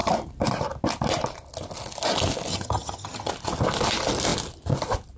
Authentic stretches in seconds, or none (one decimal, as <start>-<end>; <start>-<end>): 0.0-2.5; 3.3-5.2